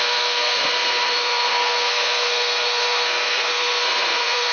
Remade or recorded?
remade